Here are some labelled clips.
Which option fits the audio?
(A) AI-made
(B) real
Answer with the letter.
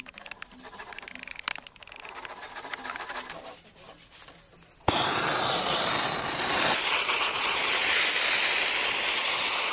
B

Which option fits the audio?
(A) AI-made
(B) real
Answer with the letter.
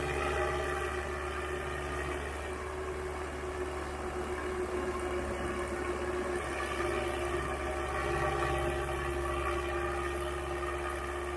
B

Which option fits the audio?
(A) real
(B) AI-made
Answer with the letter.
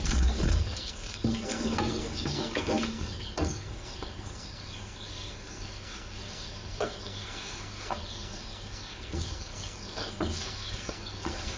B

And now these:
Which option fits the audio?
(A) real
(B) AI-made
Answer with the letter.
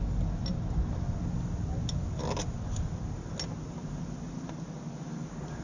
A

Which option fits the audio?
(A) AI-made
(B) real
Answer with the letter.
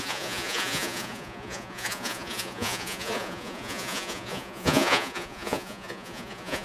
A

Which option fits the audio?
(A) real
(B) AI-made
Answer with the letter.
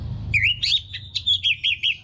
A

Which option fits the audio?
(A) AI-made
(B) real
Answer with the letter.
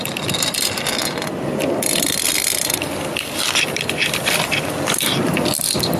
A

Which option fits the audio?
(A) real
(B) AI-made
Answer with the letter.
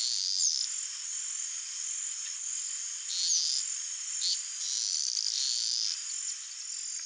A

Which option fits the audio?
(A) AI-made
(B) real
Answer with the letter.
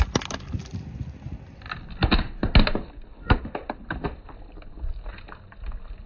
B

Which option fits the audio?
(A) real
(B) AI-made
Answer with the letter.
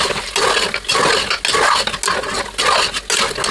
A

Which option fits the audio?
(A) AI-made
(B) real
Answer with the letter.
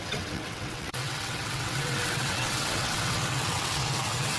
A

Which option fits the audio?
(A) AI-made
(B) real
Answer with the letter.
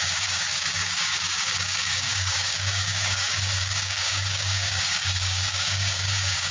A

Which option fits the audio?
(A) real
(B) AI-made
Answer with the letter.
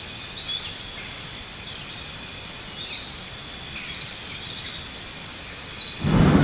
A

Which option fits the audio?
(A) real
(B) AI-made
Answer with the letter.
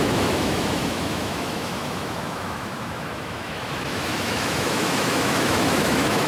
B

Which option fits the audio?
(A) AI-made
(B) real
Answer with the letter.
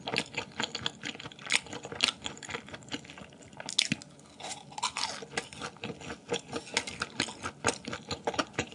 B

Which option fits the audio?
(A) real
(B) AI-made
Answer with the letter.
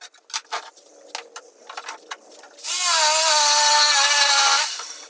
A